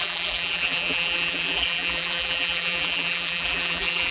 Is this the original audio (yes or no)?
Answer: no